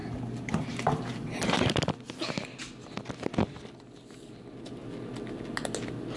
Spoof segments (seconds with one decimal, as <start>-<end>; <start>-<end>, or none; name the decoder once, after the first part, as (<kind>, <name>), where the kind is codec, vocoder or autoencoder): 0.0-2.1 (vocoder, BigVGAN v2)